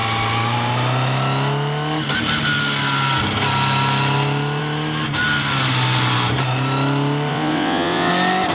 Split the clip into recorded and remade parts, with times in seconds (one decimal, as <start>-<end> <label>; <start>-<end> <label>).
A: 0.0-7.3 recorded; 7.3-8.1 remade; 8.1-8.5 recorded